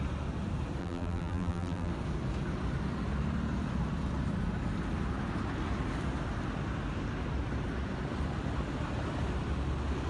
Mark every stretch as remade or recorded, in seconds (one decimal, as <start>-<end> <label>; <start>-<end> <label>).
0.0-0.8 recorded; 0.8-1.9 remade; 1.9-10.1 recorded